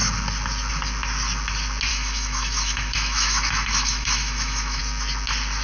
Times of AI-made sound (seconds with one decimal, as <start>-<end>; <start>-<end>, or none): 1.9-4.8